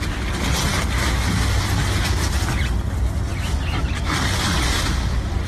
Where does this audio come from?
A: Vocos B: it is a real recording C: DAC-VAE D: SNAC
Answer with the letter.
B